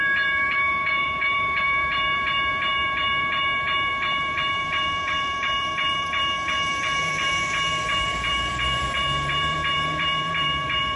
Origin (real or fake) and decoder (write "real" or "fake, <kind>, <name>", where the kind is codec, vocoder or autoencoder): fake, vocoder, BigVGAN v2